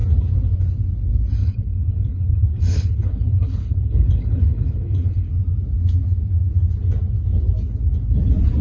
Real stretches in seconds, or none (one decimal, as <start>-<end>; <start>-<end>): 0.0-1.4; 5.3-8.6